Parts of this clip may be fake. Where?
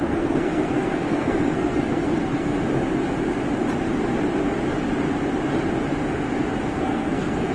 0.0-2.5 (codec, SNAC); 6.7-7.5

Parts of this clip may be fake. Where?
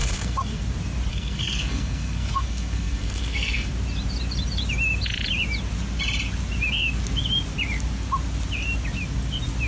0.0-0.6 (codec, SNAC); 1.1-3.7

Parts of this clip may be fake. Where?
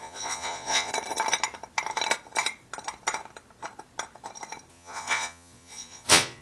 0.0-0.9 (vocoder, Vocos); 4.7-6.4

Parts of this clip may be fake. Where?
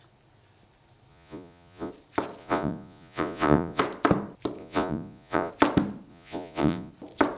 1.1-1.9 (vocoder, Vocos); 2.4-3.8; 4.6-5.5; 6.1-6.9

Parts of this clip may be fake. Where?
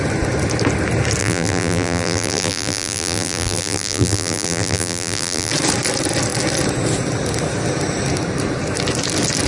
1.2-5.5 (vocoder, BigVGAN v2)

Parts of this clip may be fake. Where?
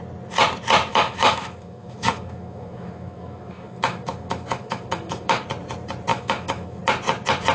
0.9-5.4 (autoencoder, DAC-VAE); 6.1-6.8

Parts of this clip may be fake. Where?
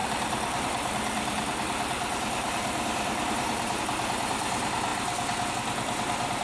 0.0-3.8 (vocoder, BigVGAN v2)